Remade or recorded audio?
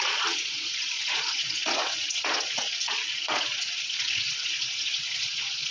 remade